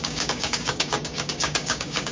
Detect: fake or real fake